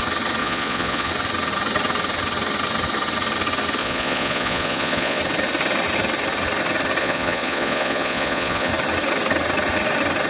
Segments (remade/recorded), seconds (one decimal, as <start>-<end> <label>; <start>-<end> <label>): 0.0-0.4 recorded; 0.4-1.1 remade; 1.1-3.8 recorded; 3.8-5.2 remade; 5.2-7.0 recorded; 7.0-8.7 remade; 8.7-10.3 recorded